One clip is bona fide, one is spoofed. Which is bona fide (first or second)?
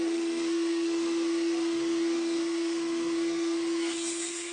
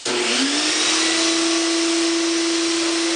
second